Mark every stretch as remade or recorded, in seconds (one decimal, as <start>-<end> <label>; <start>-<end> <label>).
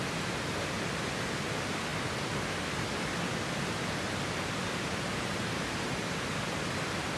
0.0-7.2 recorded